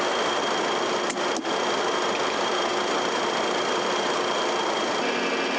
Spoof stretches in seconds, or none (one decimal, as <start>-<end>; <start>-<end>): none